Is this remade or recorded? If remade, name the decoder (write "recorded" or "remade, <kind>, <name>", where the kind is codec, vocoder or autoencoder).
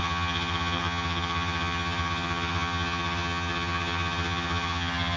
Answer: remade, vocoder, HiFi-GAN